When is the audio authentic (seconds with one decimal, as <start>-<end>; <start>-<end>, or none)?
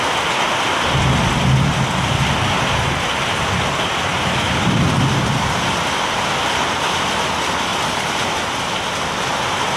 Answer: 0.0-4.1; 5.0-7.7; 8.5-9.8